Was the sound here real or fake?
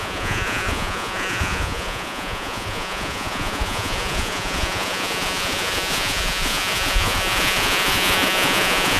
fake